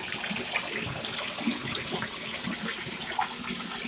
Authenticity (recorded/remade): recorded